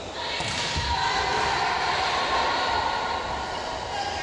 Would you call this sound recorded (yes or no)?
yes